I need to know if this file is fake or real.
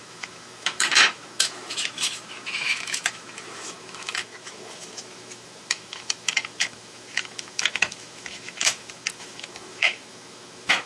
fake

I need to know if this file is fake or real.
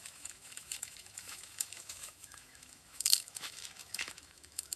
fake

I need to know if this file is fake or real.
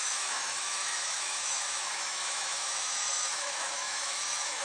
fake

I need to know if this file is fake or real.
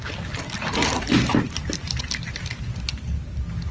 real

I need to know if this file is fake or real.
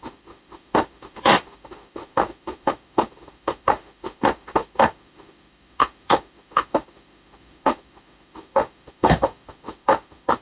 fake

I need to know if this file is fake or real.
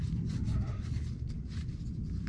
real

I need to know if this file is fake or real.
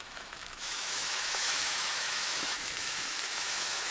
fake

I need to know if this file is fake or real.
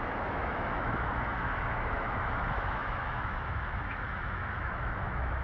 fake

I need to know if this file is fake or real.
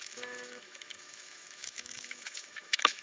fake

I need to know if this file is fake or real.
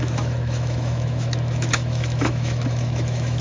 fake